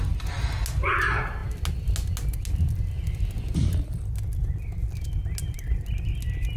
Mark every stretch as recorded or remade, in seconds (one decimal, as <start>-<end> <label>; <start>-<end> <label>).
0.0-6.6 recorded